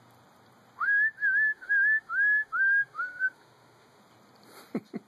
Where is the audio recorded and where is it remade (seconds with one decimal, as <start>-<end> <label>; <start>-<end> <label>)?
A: 0.0-1.5 recorded; 1.5-4.0 remade; 4.0-5.1 recorded